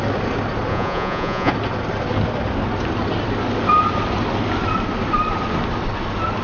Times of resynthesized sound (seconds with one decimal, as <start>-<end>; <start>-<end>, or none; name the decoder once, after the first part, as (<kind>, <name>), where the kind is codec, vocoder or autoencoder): 0.7-1.5 (vocoder, Vocos)